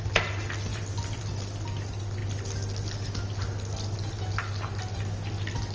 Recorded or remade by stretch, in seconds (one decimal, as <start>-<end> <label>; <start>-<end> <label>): 0.0-0.7 recorded; 0.7-1.2 remade; 1.2-5.7 recorded